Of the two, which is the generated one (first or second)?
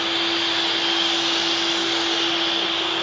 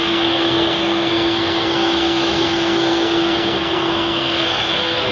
second